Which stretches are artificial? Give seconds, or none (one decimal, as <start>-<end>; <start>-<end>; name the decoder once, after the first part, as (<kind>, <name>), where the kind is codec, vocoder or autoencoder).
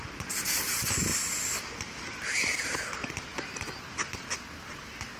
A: none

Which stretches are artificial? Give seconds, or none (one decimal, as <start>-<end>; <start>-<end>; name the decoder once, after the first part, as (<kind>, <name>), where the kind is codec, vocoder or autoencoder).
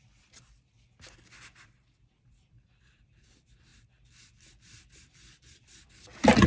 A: 0.0-6.5 (vocoder, BigVGAN v2)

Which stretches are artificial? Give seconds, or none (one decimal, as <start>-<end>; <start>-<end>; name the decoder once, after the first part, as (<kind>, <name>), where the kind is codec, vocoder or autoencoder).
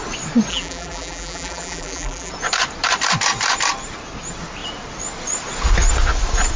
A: 0.5-2.3 (vocoder, BigVGAN v2)